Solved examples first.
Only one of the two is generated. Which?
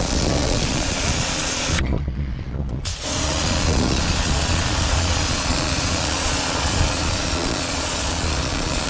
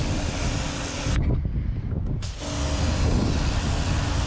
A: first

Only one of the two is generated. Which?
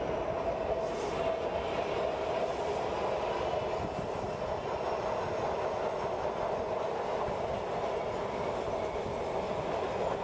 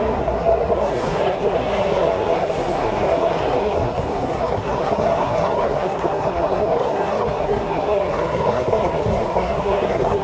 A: second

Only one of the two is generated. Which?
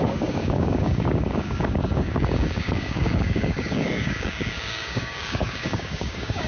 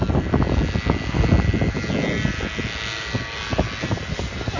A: first